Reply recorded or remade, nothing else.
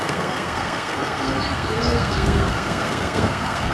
remade